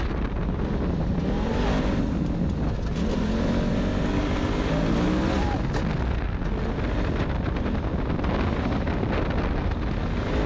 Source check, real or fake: real